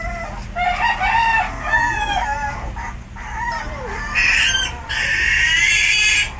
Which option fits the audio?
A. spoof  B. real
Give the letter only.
B